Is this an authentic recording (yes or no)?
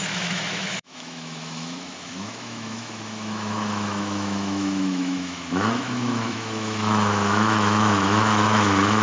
no